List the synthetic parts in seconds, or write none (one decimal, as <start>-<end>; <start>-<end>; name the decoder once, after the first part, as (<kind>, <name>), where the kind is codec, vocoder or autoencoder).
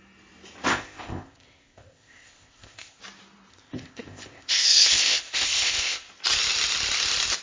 0.7-3.0 (codec, ZipCodec); 3.5-6.1